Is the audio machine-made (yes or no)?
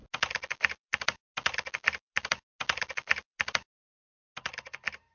no